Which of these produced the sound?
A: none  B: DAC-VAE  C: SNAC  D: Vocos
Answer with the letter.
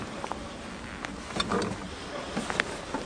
A